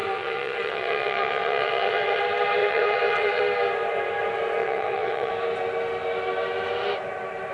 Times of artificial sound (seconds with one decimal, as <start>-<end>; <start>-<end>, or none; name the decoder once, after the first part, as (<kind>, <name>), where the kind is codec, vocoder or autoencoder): 0.0-2.2 (vocoder, WaveNeXt); 2.6-3.4; 4.6-5.3